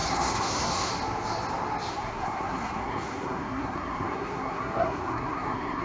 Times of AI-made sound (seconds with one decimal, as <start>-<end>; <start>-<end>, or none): 0.0-0.9; 1.9-5.8